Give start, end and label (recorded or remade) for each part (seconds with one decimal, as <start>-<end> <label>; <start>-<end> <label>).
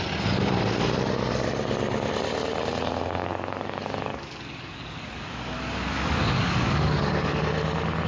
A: 0.0-3.2 recorded; 3.2-7.4 remade; 7.4-8.1 recorded